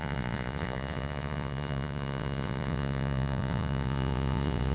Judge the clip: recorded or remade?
remade